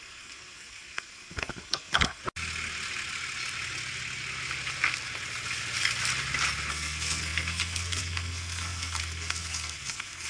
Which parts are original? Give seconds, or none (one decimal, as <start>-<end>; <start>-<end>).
2.2-6.7

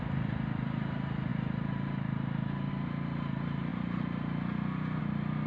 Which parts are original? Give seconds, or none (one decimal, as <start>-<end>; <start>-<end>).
0.0-5.5

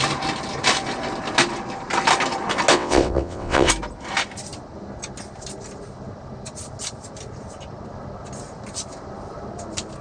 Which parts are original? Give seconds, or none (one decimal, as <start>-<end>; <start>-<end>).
0.0-2.7; 3.7-10.0

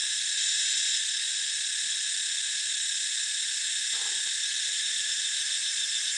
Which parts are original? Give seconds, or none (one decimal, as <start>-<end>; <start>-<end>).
0.0-6.2

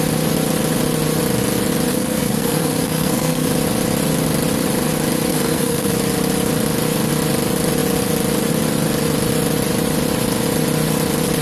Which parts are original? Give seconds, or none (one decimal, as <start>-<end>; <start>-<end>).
0.0-1.9; 3.5-5.3; 5.9-11.4

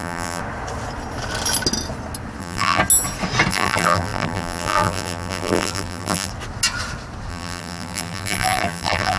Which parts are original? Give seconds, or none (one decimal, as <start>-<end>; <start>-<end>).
0.4-2.4; 2.8-3.5; 6.3-7.3

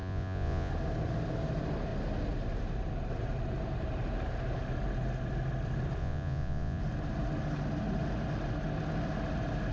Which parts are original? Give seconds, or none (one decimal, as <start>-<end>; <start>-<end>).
0.7-6.0; 6.8-9.7